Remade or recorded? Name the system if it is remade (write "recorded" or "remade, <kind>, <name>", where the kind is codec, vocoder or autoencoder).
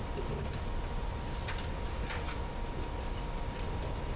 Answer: recorded